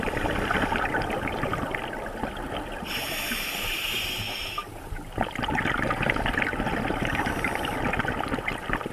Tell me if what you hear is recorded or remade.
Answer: recorded